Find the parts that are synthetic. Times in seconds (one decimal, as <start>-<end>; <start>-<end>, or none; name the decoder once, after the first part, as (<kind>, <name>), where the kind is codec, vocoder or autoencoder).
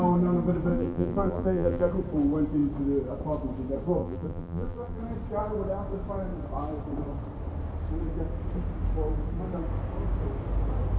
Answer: 0.7-1.9 (vocoder, BigVGAN v2); 4.0-5.0